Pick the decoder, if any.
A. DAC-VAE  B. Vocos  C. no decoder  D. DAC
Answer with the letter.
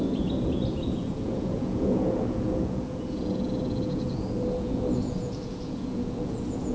B